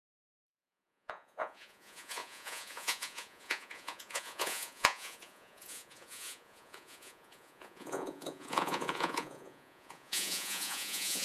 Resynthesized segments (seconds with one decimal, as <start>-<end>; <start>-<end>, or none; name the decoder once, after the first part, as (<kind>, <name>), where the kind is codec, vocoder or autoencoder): 0.0-11.2 (vocoder, Vocos)